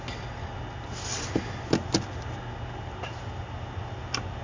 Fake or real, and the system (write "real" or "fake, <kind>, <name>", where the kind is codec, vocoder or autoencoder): real